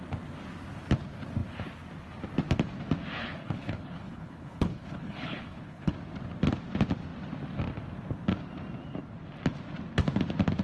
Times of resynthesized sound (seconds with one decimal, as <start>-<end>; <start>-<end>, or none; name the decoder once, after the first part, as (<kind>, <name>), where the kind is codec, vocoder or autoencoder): 3.2-5.9 (codec, HILCodec)